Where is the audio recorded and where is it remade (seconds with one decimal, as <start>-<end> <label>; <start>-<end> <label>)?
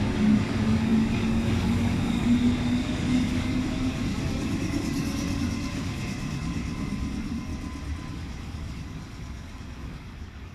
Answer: 0.0-7.5 remade; 7.5-8.1 recorded; 8.1-10.5 remade